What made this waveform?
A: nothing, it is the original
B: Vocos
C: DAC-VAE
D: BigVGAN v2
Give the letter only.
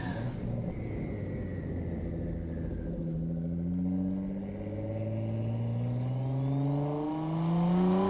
A